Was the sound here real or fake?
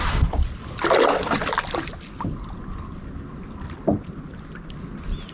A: real